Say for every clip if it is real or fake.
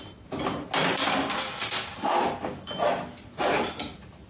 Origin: real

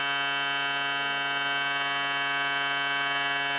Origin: real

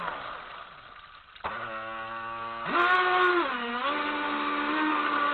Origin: real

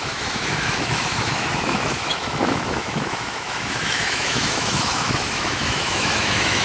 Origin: fake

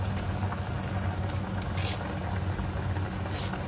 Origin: real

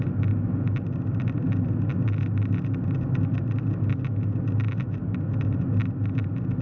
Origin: real